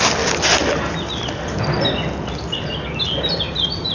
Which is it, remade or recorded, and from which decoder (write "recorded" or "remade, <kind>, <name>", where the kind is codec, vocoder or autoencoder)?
recorded